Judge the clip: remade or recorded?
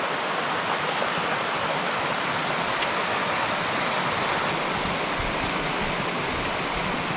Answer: recorded